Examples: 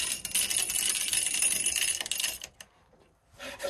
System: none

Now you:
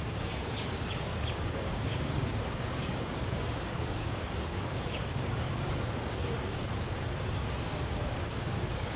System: codec, DAC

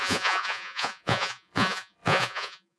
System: vocoder, Vocos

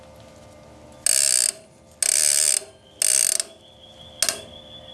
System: none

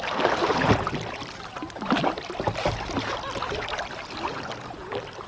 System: none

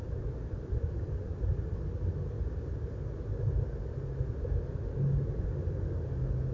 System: none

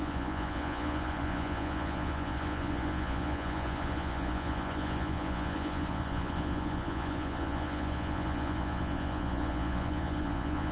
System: vocoder, Vocos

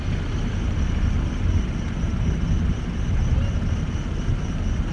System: none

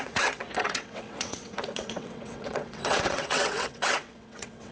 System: vocoder, WaveNeXt